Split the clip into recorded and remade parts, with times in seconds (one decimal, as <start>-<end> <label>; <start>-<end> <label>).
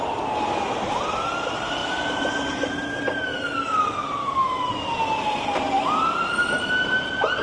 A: 0.0-4.2 recorded; 4.2-4.7 remade; 4.7-7.4 recorded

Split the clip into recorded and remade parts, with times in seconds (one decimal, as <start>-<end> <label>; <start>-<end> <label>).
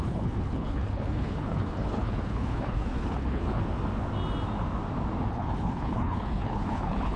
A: 0.0-3.6 remade; 3.6-5.3 recorded; 5.3-7.2 remade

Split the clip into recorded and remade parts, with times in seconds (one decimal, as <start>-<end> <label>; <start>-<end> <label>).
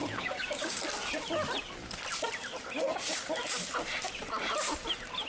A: 0.0-0.8 remade; 0.8-5.3 recorded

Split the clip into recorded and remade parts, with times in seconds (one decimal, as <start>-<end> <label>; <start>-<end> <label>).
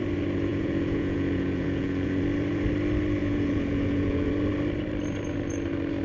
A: 0.0-0.5 recorded; 0.5-2.2 remade; 2.2-3.2 recorded; 3.2-4.3 remade; 4.3-6.0 recorded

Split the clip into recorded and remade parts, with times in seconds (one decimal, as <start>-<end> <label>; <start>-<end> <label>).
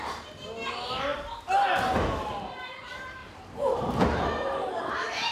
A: 0.0-3.2 recorded; 3.2-4.2 remade; 4.2-5.3 recorded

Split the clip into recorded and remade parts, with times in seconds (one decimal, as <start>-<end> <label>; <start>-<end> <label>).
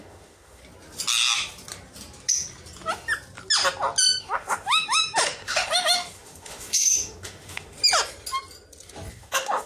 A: 0.0-0.6 remade; 0.6-4.2 recorded; 4.2-7.8 remade; 7.8-9.1 recorded; 9.1-9.7 remade